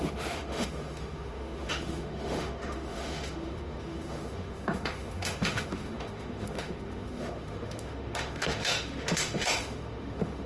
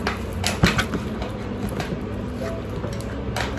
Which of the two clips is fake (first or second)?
first